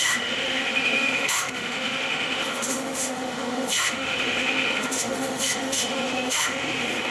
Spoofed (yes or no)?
yes